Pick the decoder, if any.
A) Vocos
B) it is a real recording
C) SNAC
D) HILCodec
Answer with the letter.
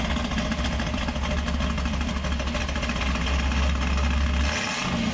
B